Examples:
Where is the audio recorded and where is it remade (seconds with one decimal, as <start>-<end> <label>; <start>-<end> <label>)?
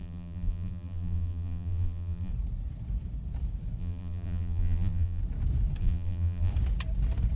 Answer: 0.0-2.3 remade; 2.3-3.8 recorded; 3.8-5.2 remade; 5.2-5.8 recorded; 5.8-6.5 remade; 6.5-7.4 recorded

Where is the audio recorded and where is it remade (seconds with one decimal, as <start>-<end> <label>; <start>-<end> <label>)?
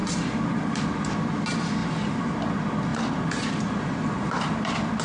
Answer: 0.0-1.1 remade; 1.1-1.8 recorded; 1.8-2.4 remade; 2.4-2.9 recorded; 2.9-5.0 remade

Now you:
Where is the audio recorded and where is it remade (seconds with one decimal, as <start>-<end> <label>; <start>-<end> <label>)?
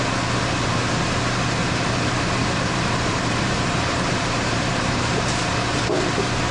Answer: 0.0-1.6 recorded; 1.6-5.5 remade; 5.5-6.5 recorded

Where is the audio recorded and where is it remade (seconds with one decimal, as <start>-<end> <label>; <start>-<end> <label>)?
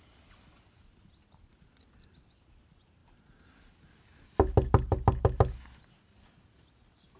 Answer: 0.0-7.2 recorded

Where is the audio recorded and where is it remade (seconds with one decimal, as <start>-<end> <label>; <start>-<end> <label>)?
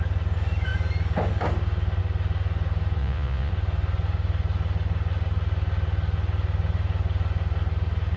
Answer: 0.0-3.0 recorded; 3.0-3.5 remade; 3.5-8.2 recorded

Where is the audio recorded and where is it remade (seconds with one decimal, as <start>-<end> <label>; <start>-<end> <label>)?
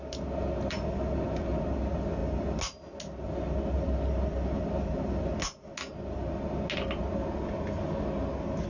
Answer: 0.0-8.7 recorded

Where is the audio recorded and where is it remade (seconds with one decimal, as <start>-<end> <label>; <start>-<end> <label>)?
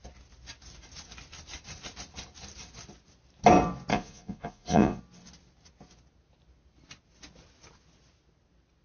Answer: 0.0-3.9 recorded; 3.9-5.0 remade; 5.0-8.8 recorded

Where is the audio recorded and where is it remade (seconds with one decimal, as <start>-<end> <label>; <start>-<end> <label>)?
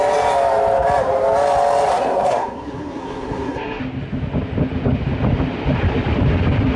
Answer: 0.0-1.9 recorded; 1.9-3.8 remade; 3.8-6.8 recorded